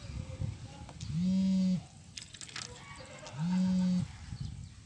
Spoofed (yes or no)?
no